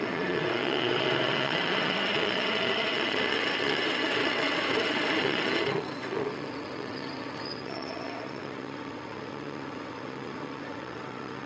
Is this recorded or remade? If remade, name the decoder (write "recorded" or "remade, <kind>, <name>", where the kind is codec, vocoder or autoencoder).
remade, vocoder, WaveNeXt